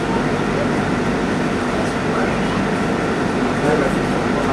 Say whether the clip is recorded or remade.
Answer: recorded